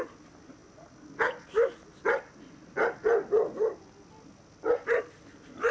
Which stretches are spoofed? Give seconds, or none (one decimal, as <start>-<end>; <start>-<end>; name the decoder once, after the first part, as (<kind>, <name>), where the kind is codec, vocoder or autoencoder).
none